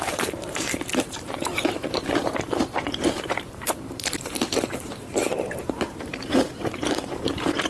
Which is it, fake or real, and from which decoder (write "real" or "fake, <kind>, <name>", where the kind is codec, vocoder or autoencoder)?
fake, vocoder, BigVGAN v2